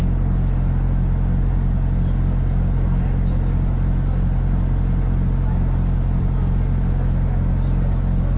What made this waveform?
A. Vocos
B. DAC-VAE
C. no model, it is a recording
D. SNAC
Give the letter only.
C